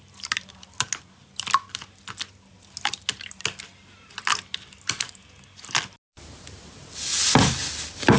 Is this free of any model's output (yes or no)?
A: yes